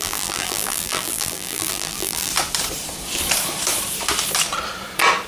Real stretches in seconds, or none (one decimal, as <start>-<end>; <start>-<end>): 2.3-5.3